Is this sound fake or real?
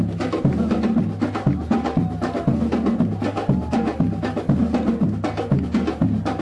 real